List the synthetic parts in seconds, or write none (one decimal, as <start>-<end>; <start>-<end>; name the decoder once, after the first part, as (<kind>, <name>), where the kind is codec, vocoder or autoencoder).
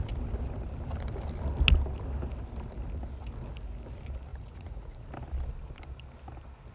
4.3-5.1 (vocoder, Vocos)